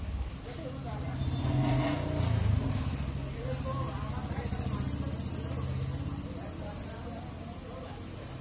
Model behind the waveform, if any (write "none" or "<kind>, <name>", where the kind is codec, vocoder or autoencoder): none